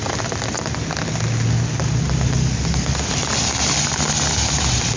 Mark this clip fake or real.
real